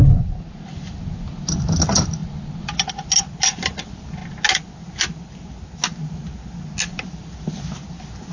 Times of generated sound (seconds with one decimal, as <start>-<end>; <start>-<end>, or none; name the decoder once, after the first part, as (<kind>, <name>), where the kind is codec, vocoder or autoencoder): none